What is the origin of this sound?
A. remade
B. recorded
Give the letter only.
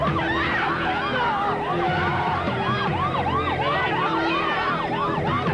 B